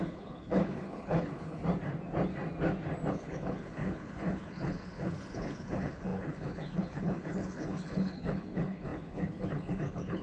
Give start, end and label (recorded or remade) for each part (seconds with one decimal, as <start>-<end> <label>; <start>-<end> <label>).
0.0-1.6 remade; 1.6-3.1 recorded; 3.1-10.2 remade